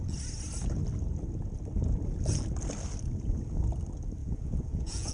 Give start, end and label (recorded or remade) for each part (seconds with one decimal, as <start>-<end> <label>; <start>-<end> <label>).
0.0-4.2 recorded; 4.2-5.1 remade